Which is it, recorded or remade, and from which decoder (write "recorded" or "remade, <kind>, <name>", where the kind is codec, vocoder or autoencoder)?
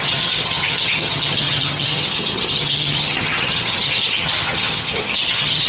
remade, vocoder, HiFi-GAN